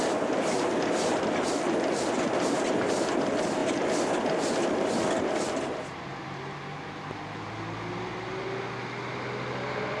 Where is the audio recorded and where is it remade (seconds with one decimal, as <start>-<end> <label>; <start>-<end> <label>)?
0.0-10.0 recorded